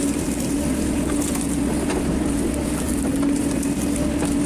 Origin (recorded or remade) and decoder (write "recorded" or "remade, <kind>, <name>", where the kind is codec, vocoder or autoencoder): recorded